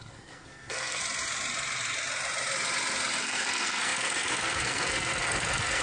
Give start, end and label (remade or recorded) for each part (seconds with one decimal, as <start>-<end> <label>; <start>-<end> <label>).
0.0-1.0 remade; 1.0-3.2 recorded; 3.2-5.8 remade